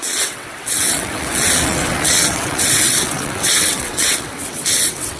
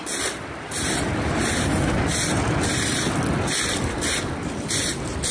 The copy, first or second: first